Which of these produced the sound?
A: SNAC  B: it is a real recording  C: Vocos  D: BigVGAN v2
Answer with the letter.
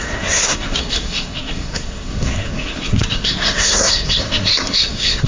A